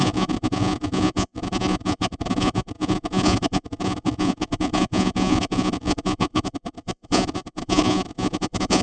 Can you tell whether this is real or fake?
fake